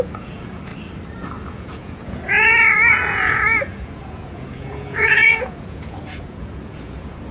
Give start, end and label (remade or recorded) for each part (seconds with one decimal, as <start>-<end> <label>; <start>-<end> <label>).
0.0-0.7 remade; 0.7-1.5 recorded; 1.5-7.3 remade